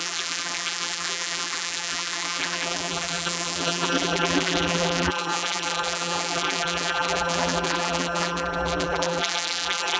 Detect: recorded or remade remade